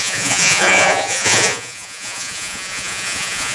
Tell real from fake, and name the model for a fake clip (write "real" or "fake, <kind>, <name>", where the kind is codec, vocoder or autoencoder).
fake, vocoder, Vocos